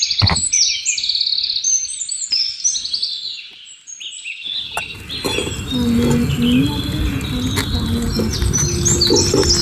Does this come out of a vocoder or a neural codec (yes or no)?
no